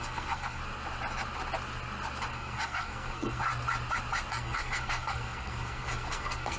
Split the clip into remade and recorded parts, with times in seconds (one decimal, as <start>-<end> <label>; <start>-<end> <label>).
0.0-0.6 remade; 0.6-2.3 recorded; 2.3-3.5 remade; 3.5-4.3 recorded; 4.3-6.6 remade